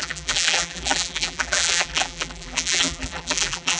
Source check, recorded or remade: remade